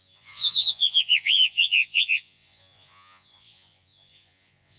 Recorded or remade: remade